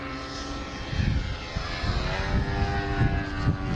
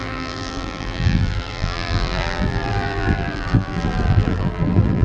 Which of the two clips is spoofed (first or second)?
second